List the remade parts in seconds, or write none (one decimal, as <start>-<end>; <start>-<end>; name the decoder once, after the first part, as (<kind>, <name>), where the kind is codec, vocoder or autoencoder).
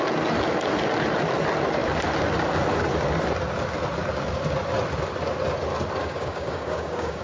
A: 6.0-7.2 (codec, DAC)